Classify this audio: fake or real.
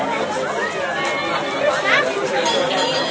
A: real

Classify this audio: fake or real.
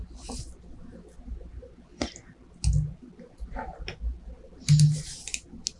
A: real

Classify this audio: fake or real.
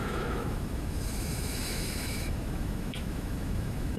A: fake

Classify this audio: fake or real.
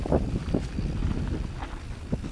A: real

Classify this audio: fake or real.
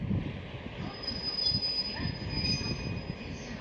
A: real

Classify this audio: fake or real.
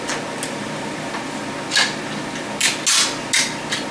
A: real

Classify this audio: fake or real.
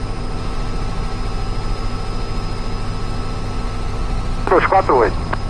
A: real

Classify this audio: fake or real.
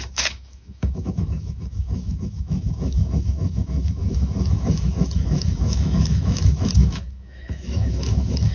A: fake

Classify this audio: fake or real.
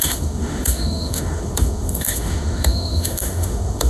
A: fake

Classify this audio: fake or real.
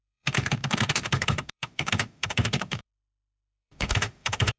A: fake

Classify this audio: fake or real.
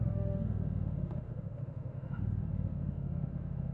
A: fake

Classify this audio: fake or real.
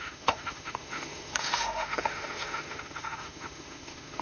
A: fake